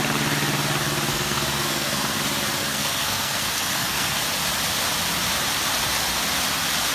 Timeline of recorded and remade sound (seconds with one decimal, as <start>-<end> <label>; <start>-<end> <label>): 0.0-1.1 recorded; 1.1-2.2 remade; 2.2-2.6 recorded; 2.6-4.2 remade; 4.2-6.9 recorded